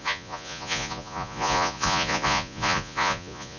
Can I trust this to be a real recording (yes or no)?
no